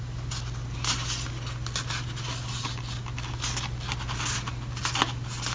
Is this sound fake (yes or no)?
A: no